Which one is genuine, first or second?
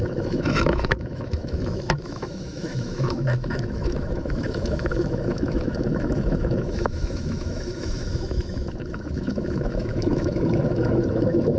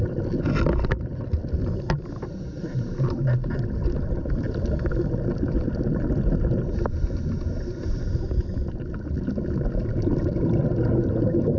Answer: second